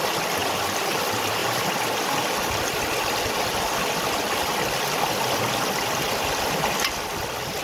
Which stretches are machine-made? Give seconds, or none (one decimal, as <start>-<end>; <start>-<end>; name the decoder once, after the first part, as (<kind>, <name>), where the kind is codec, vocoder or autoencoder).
0.4-1.0 (vocoder, BigVGAN v2); 4.4-5.5